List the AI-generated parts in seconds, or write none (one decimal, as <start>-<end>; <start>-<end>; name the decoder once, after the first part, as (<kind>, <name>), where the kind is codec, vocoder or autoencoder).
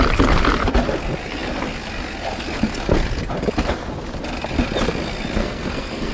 5.4-6.1 (codec, SNAC)